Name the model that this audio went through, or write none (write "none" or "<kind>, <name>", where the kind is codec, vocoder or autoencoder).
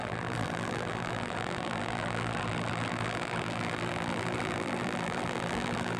vocoder, BigVGAN v2